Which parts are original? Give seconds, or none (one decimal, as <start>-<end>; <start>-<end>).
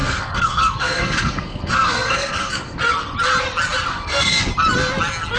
2.8-3.9; 4.5-5.4